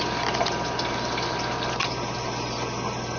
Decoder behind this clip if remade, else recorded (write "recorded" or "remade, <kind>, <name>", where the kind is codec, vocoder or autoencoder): recorded